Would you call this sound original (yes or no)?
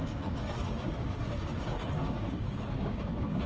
no